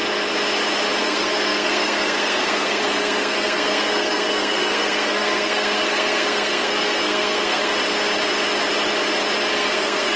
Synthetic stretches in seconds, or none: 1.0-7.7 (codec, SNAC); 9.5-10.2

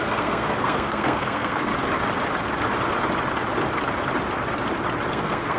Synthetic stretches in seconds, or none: 0.0-1.7 (codec, SNAC); 5.1-5.6